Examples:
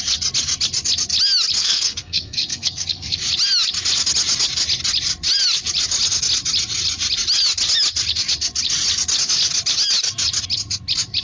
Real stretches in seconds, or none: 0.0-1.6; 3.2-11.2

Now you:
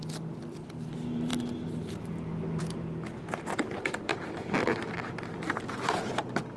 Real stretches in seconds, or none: 0.0-6.6

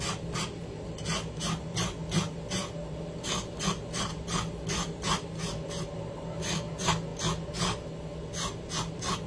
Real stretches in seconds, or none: 0.0-9.3

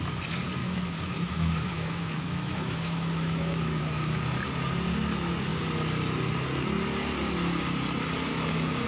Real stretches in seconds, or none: 0.0-0.6; 3.8-8.9

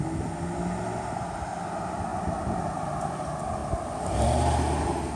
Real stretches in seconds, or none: 0.0-5.2

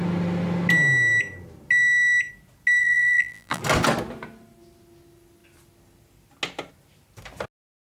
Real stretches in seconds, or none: 0.0-2.8; 3.6-7.9

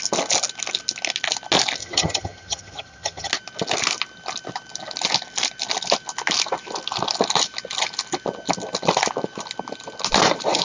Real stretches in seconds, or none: 0.0-1.8; 3.3-10.6